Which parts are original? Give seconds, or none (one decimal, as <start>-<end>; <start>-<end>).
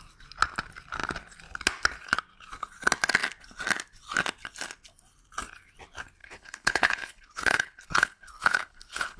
0.0-6.2